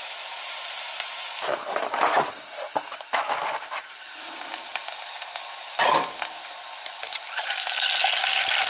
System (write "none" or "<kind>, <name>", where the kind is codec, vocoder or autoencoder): none